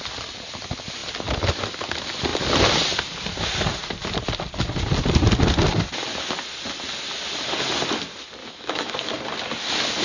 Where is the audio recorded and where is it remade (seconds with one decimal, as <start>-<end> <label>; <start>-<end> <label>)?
0.0-8.4 recorded; 8.4-8.9 remade; 8.9-10.0 recorded